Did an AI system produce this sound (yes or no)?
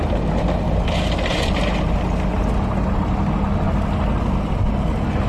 no